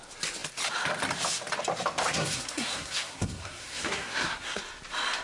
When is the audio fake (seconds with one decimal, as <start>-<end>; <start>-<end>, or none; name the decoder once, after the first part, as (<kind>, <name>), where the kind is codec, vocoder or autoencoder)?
2.1-4.6 (codec, SNAC)